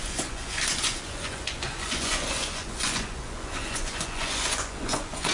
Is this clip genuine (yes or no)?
no